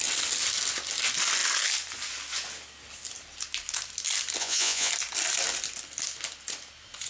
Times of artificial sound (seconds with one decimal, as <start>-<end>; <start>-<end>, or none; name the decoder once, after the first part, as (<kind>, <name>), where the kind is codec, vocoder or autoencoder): 4.4-4.9 (vocoder, Vocos)

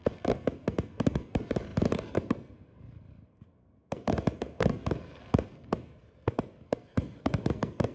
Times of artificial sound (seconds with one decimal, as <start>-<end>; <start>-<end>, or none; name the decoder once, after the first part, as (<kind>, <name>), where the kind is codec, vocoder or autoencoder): 0.0-7.9 (codec, SNAC)